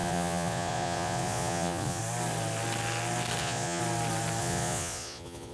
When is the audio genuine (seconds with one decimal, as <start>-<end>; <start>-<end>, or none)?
2.0-3.4; 3.8-4.4